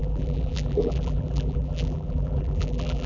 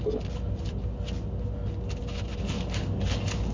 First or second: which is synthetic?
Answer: first